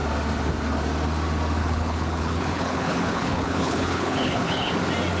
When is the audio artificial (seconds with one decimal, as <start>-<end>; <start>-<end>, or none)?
1.6-4.7